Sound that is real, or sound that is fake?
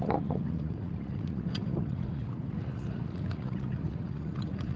fake